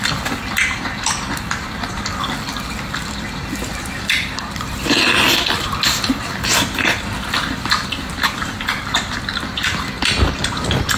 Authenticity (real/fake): fake